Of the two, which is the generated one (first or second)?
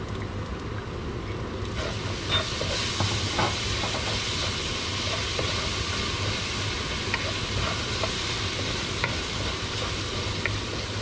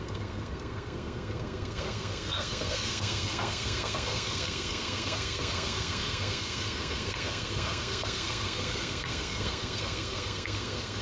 second